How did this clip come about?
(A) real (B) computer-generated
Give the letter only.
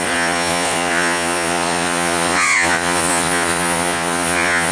B